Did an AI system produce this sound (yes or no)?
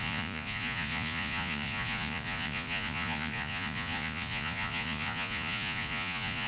yes